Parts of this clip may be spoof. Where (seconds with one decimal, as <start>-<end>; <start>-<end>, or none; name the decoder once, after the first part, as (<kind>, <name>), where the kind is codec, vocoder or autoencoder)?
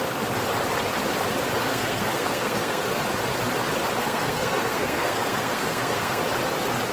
1.6-3.0 (codec, SNAC); 4.0-6.2